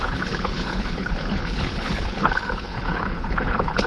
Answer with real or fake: fake